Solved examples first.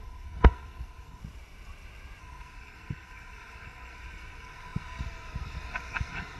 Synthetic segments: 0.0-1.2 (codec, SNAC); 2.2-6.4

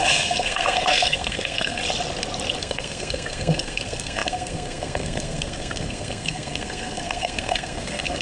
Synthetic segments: 0.0-1.8 (codec, SNAC); 2.6-8.2

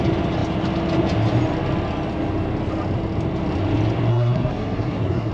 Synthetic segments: 4.1-5.3 (codec, SNAC)

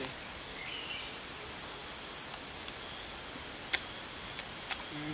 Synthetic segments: none

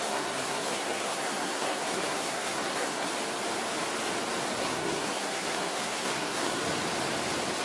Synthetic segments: 0.0-3.1 (codec, SNAC); 4.6-6.6

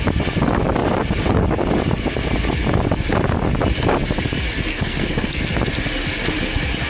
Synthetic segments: 4.7-5.4 (codec, SNAC)

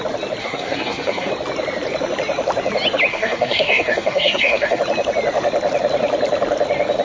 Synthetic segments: 0.4-1.3 (codec, SNAC); 3.1-4.8

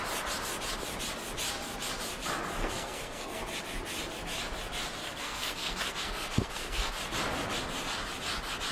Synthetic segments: 2.6-3.4 (codec, SNAC); 5.0-6.9